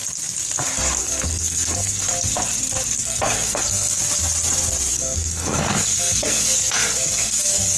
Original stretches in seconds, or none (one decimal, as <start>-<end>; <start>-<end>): 0.0-1.0; 2.1-3.0; 4.0-4.9